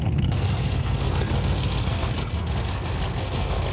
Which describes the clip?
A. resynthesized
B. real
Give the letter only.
A